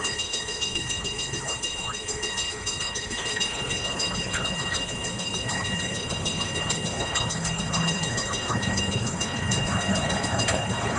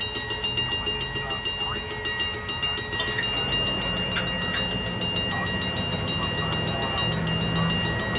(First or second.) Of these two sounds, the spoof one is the first